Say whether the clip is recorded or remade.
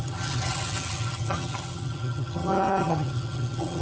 remade